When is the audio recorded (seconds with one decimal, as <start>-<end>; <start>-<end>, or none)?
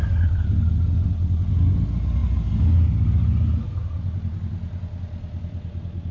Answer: 0.0-6.1